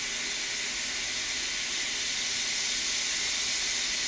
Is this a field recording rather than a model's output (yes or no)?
yes